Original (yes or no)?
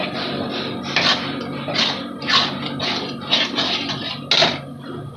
yes